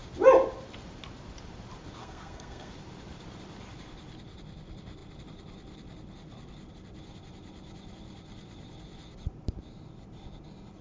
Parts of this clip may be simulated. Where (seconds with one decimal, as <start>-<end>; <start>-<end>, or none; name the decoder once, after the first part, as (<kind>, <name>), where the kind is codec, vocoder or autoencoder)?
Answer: 2.0-2.7 (codec, SNAC)

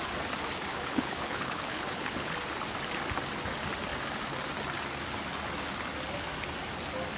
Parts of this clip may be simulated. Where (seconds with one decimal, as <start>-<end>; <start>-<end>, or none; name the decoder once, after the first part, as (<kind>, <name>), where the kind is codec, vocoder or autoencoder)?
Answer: 0.7-2.3 (codec, HILCodec)

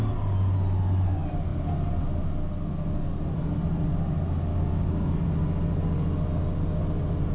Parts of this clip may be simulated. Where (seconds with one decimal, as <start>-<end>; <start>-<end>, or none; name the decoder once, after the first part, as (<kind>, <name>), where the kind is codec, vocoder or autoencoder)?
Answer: 4.5-5.1 (codec, DAC)

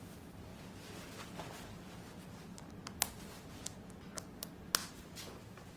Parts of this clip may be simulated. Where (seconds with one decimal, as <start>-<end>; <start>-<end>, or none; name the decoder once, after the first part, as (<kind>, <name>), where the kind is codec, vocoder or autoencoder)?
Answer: 4.8-5.8 (vocoder, BigVGAN v2)